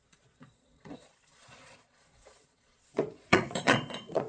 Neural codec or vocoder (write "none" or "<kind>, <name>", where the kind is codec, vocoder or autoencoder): vocoder, Vocos